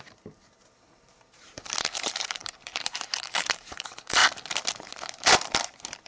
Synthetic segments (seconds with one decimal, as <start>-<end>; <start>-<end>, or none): 0.0-4.2